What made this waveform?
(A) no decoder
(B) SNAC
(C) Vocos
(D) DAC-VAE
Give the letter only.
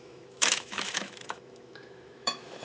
D